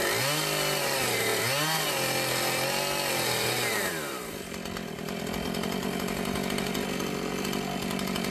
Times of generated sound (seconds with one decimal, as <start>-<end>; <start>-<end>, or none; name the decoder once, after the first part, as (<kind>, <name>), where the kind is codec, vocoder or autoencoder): none